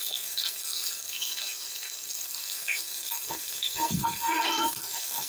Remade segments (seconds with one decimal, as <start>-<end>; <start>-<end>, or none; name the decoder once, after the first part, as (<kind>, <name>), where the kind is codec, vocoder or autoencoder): 0.0-5.3 (codec, SNAC)